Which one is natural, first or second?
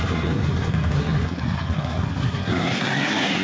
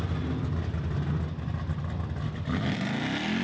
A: second